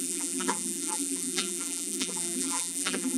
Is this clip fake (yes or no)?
yes